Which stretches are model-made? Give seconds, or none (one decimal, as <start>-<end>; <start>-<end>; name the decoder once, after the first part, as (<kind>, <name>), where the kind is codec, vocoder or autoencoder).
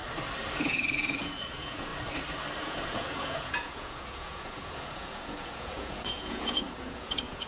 0.6-1.9 (vocoder, Vocos); 2.6-7.5